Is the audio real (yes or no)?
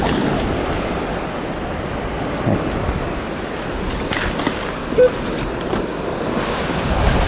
yes